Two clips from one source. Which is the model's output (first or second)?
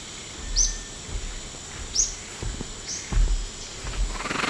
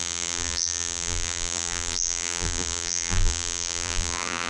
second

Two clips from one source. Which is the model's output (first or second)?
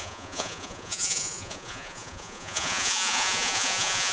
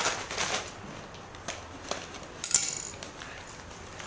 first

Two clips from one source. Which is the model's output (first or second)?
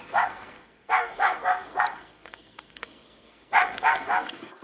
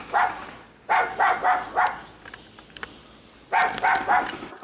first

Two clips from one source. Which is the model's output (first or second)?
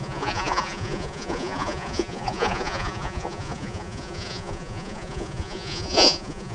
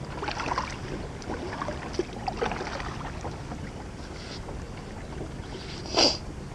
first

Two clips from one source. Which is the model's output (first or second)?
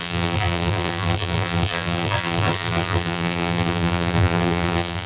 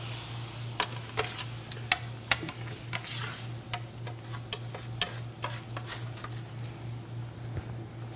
first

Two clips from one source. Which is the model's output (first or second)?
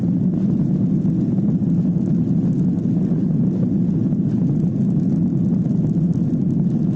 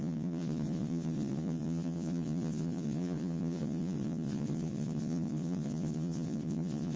second